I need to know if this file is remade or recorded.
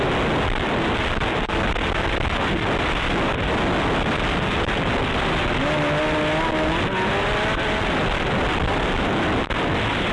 recorded